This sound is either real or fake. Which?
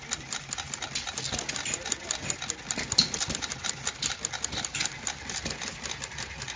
real